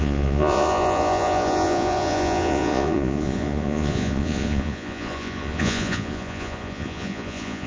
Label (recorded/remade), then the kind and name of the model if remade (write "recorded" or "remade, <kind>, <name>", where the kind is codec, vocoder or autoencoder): remade, vocoder, Vocos